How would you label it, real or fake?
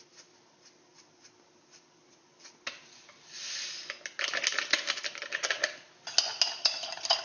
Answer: real